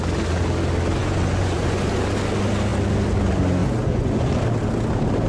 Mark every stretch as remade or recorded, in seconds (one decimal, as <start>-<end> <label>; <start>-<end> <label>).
0.0-1.0 recorded; 1.0-1.8 remade; 1.8-3.6 recorded; 3.6-4.4 remade; 4.4-5.3 recorded